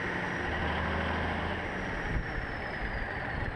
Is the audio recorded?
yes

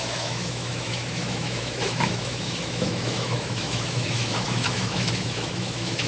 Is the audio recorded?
no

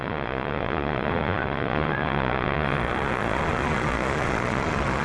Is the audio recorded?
no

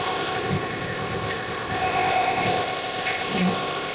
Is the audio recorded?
no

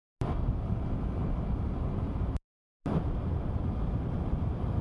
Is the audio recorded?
yes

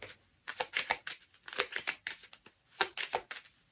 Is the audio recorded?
yes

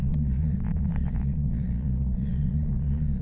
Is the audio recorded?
no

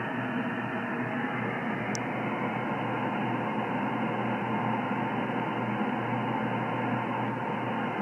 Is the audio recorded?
yes